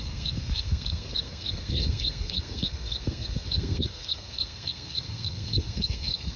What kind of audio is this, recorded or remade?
remade